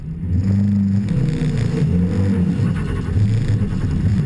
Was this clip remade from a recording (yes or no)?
no